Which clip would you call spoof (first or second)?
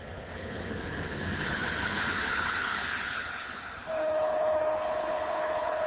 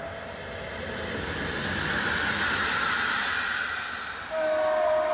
first